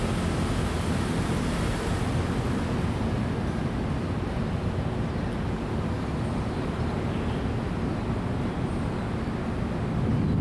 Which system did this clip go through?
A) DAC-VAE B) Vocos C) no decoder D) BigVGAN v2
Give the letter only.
C